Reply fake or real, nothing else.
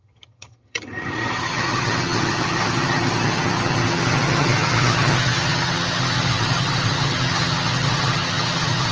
fake